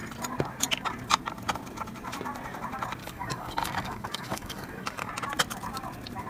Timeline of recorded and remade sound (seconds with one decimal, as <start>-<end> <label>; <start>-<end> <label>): 0.0-3.0 recorded; 3.0-5.1 remade; 5.1-6.3 recorded